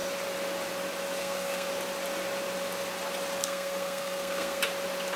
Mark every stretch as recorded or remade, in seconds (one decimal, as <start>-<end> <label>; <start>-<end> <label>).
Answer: 0.0-1.2 recorded; 1.2-1.7 remade; 1.7-3.4 recorded; 3.4-4.6 remade; 4.6-5.2 recorded